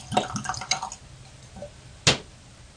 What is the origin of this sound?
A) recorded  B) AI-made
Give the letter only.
A